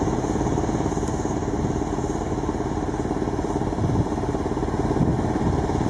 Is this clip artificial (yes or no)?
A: no